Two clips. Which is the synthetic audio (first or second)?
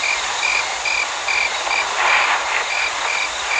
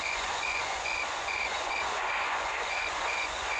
second